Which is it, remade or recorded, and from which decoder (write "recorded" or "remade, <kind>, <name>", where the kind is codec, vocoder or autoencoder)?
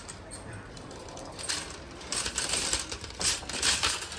recorded